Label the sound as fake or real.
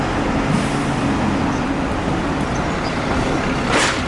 fake